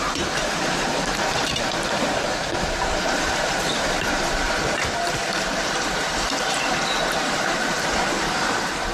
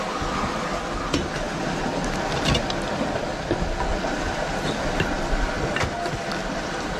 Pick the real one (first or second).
second